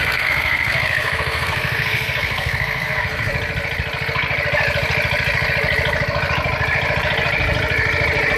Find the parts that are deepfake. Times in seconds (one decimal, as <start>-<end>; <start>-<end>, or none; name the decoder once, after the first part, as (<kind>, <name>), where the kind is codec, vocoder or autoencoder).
0.0-3.3 (codec, SNAC)